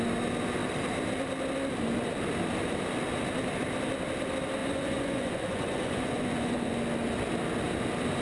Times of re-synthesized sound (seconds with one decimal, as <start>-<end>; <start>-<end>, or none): 4.6-6.8